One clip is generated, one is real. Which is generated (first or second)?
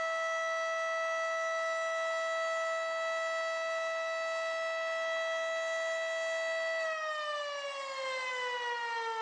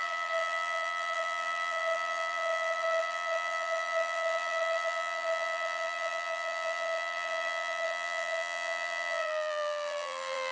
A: second